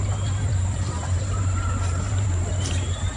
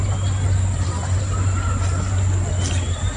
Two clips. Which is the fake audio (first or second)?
first